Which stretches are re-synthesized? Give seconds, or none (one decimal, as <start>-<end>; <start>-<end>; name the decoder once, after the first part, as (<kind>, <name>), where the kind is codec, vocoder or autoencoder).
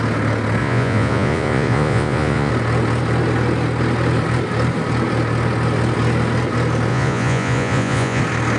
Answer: 0.6-2.5 (vocoder, Vocos); 6.9-8.2